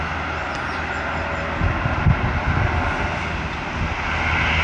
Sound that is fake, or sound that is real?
real